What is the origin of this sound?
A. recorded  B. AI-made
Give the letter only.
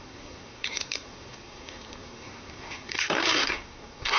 B